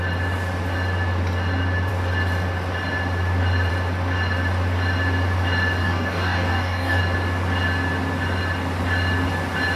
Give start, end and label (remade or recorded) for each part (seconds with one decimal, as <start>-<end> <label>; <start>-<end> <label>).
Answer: 0.0-5.8 recorded; 5.8-7.0 remade; 7.0-9.8 recorded